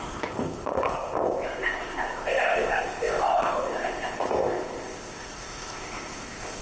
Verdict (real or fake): fake